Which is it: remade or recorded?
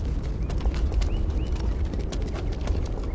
recorded